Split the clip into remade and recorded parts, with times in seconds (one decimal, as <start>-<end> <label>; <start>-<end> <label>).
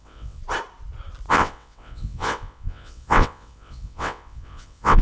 0.0-0.4 remade; 0.4-1.3 recorded; 1.3-5.0 remade